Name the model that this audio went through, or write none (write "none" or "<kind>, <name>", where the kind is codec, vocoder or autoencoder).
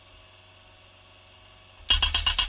none